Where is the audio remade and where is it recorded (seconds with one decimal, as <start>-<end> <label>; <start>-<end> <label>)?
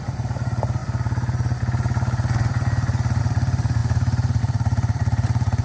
0.0-0.8 remade; 0.8-3.2 recorded; 3.2-5.6 remade